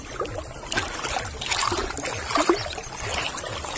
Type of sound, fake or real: real